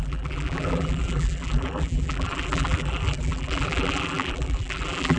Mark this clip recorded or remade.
remade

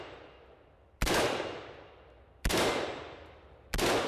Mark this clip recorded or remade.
remade